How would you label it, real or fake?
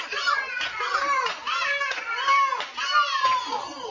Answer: real